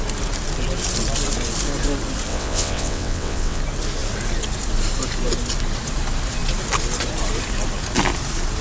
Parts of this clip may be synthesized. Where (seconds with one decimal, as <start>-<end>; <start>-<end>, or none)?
2.3-3.6